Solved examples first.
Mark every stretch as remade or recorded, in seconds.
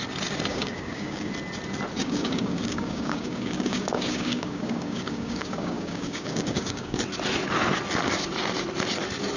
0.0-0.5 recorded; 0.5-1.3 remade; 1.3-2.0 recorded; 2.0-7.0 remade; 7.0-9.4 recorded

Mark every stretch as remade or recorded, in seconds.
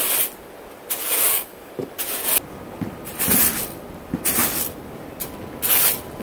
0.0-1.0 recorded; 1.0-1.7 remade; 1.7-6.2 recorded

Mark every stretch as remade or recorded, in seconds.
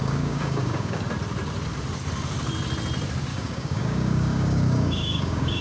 0.0-1.0 remade; 1.0-3.3 recorded; 3.3-5.6 remade